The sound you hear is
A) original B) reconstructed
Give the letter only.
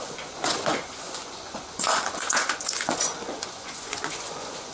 B